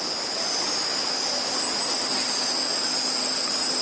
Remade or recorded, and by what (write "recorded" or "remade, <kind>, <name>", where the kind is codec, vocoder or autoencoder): recorded